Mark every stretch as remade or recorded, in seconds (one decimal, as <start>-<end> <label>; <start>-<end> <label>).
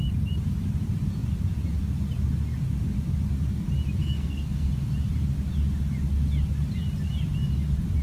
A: 0.0-4.0 recorded; 4.0-4.7 remade; 4.7-8.0 recorded